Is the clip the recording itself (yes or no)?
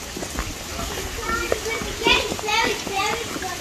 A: yes